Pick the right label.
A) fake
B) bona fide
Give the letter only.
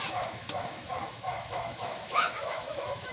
A